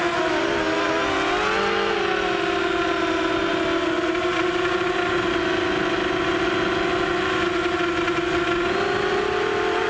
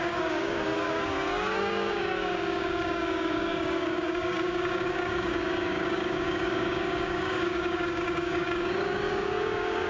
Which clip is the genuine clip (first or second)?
first